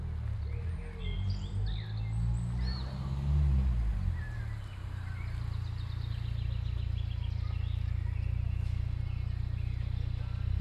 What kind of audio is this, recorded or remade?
recorded